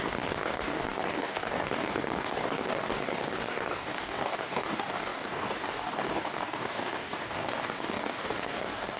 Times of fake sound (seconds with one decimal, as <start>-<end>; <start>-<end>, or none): 0.0-9.0

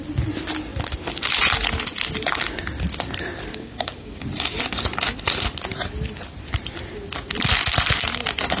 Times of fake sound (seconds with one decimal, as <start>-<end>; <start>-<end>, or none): 3.5-4.2

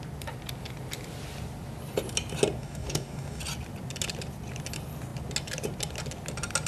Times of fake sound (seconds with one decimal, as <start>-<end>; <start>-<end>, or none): 2.6-3.4

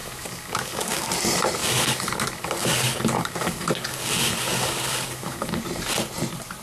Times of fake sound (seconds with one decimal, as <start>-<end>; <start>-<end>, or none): 0.0-1.1; 1.6-5.6

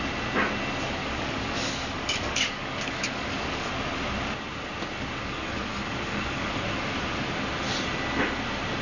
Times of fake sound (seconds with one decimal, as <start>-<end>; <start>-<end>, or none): 1.0-3.7; 5.2-6.6

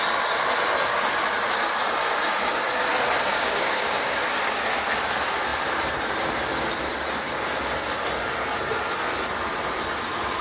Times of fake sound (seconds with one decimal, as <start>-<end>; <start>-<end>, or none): 3.3-4.6

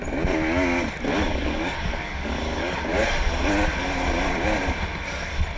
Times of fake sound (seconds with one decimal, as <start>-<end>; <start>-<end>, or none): 1.3-2.8

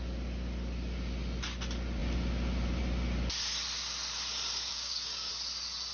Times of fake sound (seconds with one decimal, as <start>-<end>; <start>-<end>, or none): 4.7-5.3